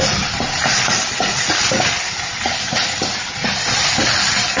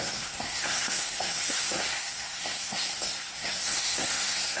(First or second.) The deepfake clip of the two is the second